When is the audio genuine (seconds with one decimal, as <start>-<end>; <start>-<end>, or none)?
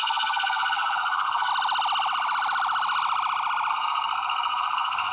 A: 1.5-3.7